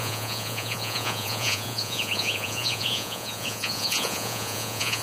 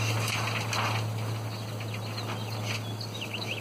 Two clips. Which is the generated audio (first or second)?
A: first